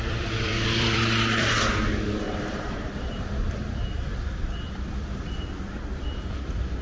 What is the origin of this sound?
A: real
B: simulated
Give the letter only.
B